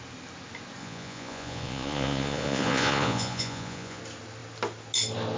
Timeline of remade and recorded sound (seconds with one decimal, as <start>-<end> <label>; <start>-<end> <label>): 0.0-0.8 recorded; 0.8-4.0 remade; 4.0-5.4 recorded